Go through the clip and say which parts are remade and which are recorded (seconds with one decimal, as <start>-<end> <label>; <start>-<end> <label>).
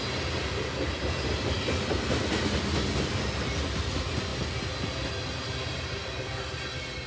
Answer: 0.0-7.1 recorded